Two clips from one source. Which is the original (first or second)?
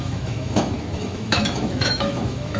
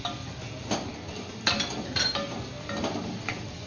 second